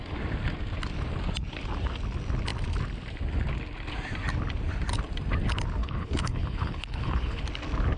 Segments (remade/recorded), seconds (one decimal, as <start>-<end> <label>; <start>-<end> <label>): 0.0-5.8 recorded; 5.8-7.4 remade; 7.4-8.0 recorded